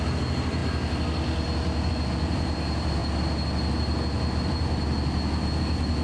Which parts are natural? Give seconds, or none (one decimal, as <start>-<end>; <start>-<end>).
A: 0.0-6.0